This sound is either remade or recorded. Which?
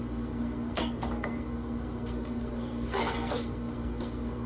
remade